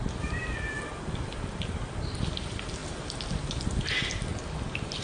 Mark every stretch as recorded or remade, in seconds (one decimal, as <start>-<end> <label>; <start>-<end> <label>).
0.0-2.8 recorded; 2.8-3.3 remade; 3.3-5.0 recorded